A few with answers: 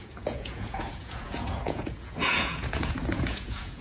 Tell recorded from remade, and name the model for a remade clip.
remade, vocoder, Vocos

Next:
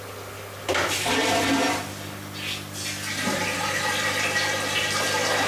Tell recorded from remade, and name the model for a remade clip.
recorded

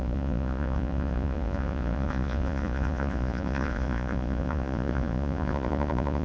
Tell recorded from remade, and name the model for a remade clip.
remade, vocoder, Vocos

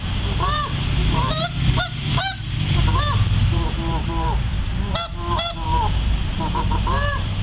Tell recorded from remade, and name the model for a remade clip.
remade, vocoder, BigVGAN v2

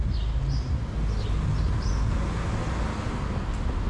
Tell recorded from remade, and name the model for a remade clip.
recorded